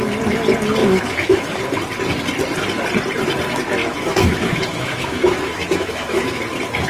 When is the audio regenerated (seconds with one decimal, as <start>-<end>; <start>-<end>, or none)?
0.8-1.6; 3.8-6.4